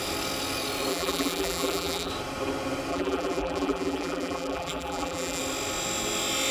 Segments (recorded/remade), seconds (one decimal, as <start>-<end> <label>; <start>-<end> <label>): 0.0-0.9 recorded; 0.9-2.1 remade; 2.1-2.9 recorded; 2.9-5.4 remade; 5.4-6.5 recorded